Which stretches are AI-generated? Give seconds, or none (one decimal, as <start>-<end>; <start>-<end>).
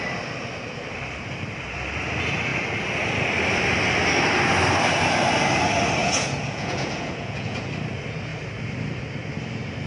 6.0-7.7